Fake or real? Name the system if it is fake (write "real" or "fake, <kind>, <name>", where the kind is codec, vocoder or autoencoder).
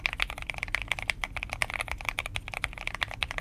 real